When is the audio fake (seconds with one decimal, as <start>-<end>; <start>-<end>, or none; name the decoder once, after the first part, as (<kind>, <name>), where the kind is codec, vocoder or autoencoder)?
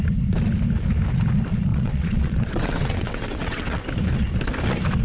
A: 1.7-3.8 (vocoder, WaveNeXt)